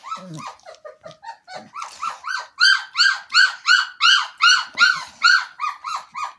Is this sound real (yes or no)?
yes